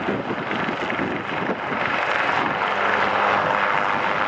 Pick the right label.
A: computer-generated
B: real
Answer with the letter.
B